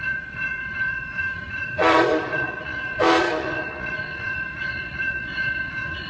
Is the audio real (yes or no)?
no